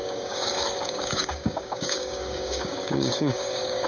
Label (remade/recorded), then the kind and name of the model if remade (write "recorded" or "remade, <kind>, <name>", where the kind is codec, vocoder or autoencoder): remade, codec, DAC